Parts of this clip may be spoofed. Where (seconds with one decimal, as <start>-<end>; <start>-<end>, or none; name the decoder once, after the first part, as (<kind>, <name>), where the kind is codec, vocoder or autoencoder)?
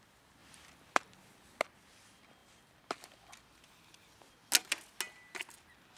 none